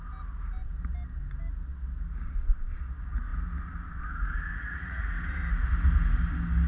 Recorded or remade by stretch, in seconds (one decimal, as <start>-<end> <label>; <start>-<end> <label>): 0.0-4.5 recorded; 4.5-5.1 remade; 5.1-6.7 recorded